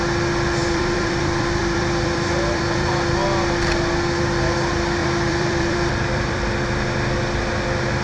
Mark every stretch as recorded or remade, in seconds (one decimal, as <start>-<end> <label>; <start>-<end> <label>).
0.0-0.6 recorded; 0.6-2.9 remade; 2.9-5.0 recorded; 5.0-6.5 remade; 6.5-8.0 recorded